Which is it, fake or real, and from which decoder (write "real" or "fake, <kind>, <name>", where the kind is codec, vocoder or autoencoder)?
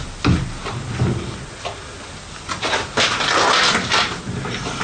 real